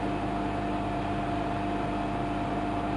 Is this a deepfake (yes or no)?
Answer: no